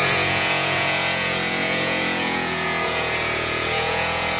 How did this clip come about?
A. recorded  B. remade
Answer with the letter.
B